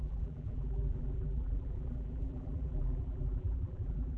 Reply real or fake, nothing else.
fake